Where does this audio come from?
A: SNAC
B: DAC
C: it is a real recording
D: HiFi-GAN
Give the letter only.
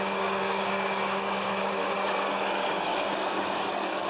B